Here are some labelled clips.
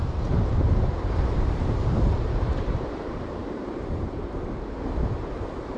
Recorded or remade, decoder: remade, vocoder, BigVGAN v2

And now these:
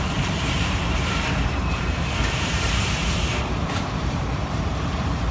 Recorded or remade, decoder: remade, vocoder, BigVGAN v2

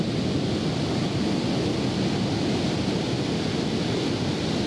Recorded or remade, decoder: recorded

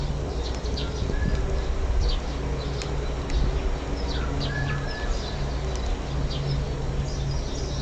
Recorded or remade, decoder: recorded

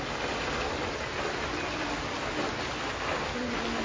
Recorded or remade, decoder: recorded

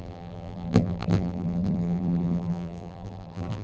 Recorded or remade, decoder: remade, vocoder, BigVGAN v2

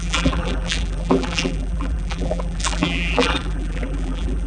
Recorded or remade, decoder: remade, vocoder, BigVGAN v2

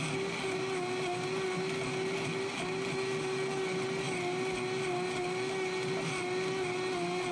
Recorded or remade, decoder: recorded